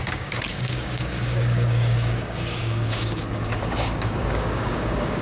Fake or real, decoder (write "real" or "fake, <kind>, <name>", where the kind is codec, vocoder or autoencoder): fake, codec, DAC